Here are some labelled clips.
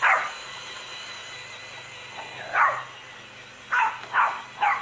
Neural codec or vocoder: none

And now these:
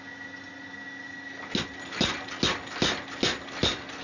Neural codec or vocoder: none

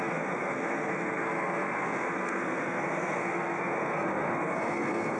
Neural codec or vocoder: codec, SNAC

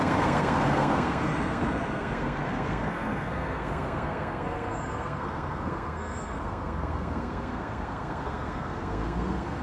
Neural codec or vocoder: codec, SNAC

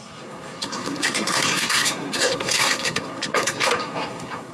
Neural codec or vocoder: codec, SNAC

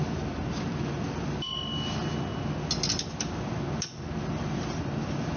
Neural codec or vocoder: none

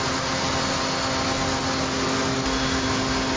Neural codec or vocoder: none